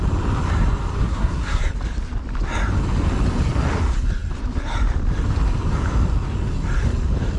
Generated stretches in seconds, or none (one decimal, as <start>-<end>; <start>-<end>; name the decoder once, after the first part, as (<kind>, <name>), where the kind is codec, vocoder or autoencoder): 1.0-1.6 (codec, SNAC)

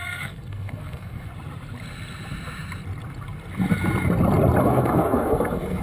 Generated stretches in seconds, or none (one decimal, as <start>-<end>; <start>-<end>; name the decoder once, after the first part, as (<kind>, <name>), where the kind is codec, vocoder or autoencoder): 0.0-1.3 (codec, SNAC); 4.6-5.8

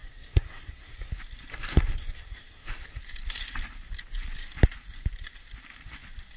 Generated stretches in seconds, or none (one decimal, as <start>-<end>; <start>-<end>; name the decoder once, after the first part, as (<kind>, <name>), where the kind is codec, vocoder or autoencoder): 0.0-1.1 (codec, SNAC); 1.5-3.0

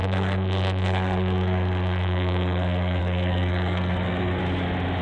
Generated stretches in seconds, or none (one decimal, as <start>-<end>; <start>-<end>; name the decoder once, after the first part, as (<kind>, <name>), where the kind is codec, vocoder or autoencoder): 0.0-4.4 (codec, SNAC)

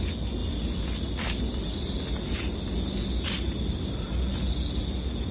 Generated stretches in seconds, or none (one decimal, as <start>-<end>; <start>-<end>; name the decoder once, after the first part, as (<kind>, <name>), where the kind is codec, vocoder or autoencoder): none

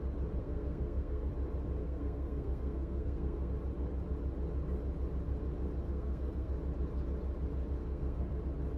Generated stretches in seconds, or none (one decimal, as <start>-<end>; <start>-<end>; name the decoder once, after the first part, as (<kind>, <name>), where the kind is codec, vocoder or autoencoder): 0.4-1.3 (codec, SNAC); 1.8-3.5; 5.9-6.5; 7.8-8.4

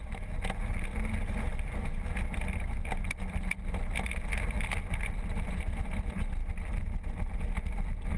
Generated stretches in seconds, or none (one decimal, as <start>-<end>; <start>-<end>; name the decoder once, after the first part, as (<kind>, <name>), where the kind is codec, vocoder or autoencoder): none

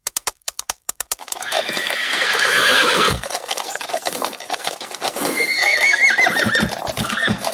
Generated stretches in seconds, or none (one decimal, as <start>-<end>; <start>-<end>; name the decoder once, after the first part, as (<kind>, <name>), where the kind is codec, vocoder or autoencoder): 0.0-6.0 (codec, SNAC); 7.0-7.5